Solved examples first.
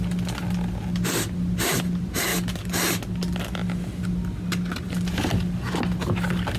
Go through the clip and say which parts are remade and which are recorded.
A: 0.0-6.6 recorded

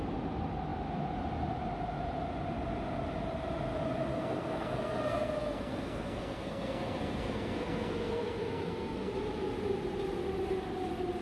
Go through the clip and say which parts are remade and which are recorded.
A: 0.0-4.1 recorded; 4.1-9.1 remade; 9.1-11.2 recorded

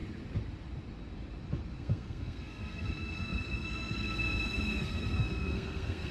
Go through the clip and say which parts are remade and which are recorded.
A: 0.0-1.8 recorded; 1.8-6.1 remade

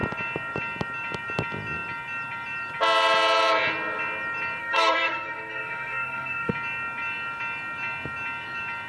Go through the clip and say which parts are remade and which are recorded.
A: 0.0-4.6 recorded; 4.6-6.5 remade; 6.5-8.9 recorded

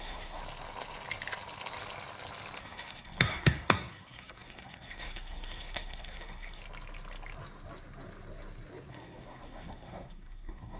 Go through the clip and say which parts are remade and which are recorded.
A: 0.0-0.4 remade; 0.4-2.6 recorded; 2.6-6.6 remade; 6.6-8.9 recorded; 8.9-10.8 remade

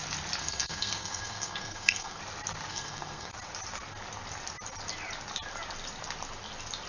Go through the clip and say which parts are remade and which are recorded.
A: 0.0-0.4 recorded; 0.4-2.2 remade; 2.2-2.7 recorded; 2.7-3.3 remade; 3.3-6.9 recorded